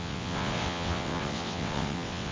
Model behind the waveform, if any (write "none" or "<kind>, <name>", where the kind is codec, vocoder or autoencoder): vocoder, WaveNeXt